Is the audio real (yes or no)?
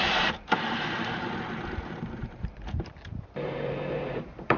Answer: no